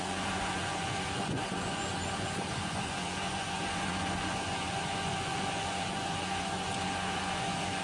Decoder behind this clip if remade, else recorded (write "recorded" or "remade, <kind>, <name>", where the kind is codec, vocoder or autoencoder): remade, vocoder, Vocos